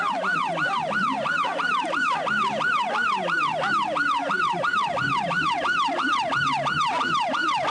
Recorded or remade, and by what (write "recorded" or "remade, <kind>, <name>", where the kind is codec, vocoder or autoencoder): recorded